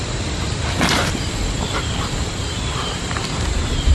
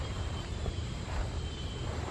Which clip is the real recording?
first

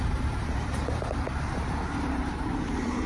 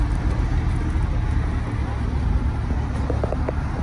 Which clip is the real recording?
second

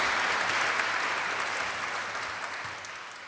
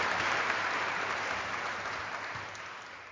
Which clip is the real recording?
first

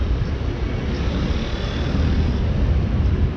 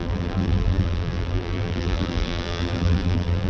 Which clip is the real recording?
first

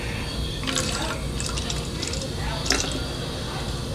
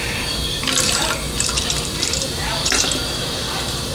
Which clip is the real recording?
first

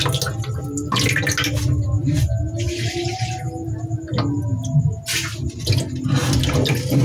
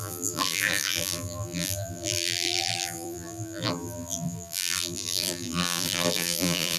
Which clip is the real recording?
first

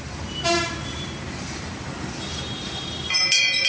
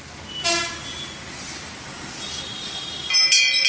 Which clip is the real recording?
second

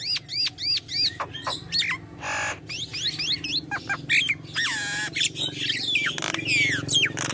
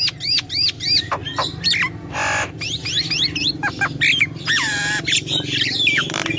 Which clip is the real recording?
first